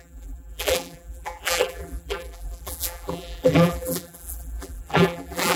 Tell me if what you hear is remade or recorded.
remade